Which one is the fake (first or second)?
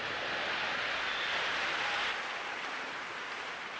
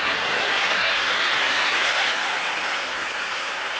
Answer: second